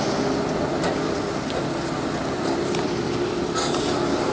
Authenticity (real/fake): real